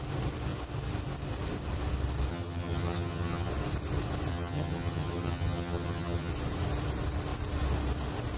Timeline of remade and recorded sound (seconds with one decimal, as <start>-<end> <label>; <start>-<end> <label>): 0.0-2.3 recorded; 2.3-3.5 remade; 3.5-4.3 recorded; 4.3-6.3 remade; 6.3-8.4 recorded